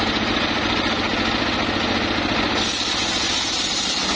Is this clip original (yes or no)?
yes